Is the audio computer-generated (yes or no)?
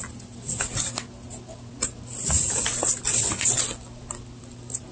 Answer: no